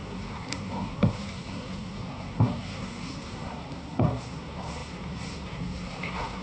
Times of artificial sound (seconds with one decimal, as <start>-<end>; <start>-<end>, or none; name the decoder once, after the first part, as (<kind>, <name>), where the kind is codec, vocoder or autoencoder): 0.0-6.4 (codec, SNAC)